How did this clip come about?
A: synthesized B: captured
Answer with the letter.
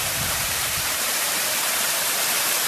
A